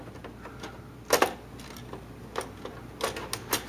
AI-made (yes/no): no